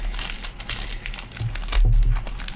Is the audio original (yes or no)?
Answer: yes